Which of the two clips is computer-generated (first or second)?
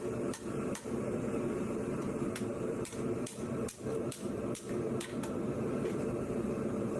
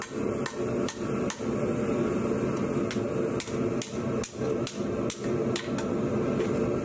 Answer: first